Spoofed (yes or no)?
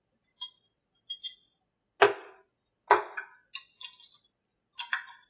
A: no